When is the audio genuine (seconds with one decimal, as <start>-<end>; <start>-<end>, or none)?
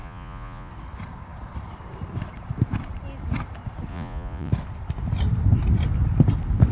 0.7-3.9; 4.5-6.7